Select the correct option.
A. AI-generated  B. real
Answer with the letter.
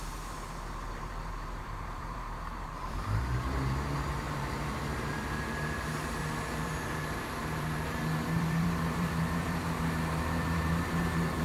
A